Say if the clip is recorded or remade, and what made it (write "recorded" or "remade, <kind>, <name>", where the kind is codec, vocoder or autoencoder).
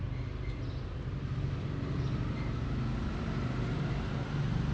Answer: recorded